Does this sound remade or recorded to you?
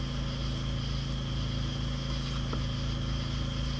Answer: recorded